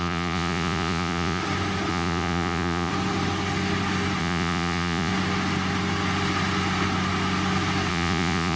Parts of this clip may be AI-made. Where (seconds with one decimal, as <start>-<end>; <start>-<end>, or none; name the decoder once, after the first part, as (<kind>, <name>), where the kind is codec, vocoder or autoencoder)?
0.0-1.4 (vocoder, Vocos); 1.9-2.9; 4.2-5.1; 7.9-8.6